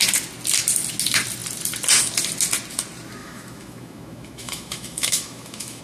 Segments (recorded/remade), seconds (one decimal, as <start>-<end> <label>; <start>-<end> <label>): 0.0-3.2 recorded; 3.2-5.8 remade